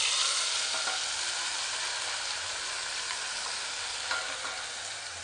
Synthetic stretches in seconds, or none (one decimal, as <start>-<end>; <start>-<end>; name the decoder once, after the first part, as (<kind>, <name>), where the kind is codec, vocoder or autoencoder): none